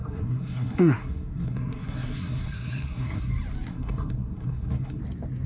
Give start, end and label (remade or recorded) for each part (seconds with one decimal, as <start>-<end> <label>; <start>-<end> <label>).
0.0-3.3 remade; 3.3-3.7 recorded; 3.7-5.0 remade; 5.0-5.5 recorded